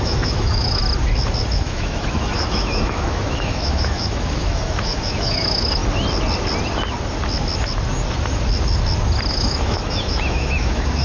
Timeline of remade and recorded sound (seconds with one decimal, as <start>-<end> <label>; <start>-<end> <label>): 0.0-0.8 remade; 0.8-1.5 recorded; 1.5-5.8 remade; 5.8-9.3 recorded; 9.3-11.0 remade